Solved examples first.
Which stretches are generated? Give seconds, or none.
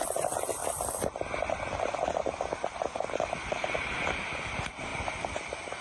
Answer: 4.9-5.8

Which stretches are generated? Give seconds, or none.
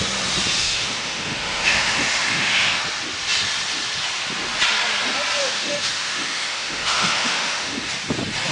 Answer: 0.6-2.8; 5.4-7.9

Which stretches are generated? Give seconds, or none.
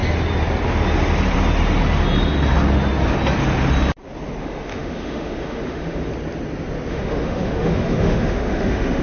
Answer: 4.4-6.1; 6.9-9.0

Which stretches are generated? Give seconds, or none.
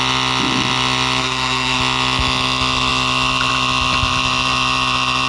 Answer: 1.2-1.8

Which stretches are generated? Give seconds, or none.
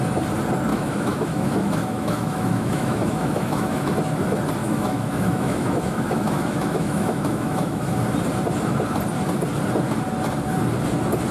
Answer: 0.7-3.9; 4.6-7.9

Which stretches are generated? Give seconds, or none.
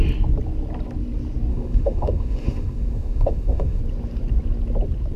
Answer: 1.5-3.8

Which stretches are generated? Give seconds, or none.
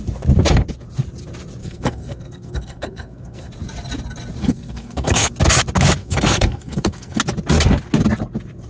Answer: 1.6-3.5; 4.4-5.3; 6.0-7.2